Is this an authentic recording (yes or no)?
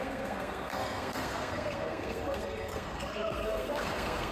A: no